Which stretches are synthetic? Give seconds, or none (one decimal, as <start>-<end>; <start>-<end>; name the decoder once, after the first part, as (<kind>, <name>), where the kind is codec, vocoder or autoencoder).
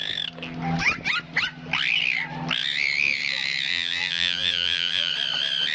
3.7-5.1 (vocoder, BigVGAN v2)